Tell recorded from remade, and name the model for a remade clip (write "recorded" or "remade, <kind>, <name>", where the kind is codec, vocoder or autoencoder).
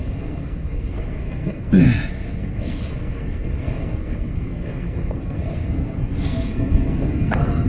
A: remade, codec, SNAC